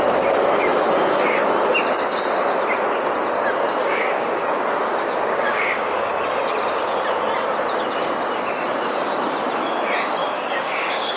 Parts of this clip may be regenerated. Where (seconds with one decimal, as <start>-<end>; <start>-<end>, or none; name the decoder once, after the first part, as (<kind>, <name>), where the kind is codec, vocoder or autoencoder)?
3.8-4.5 (codec, DAC); 5.5-6.1; 10.2-11.2